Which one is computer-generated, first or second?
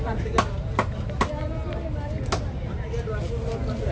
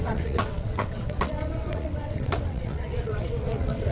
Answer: second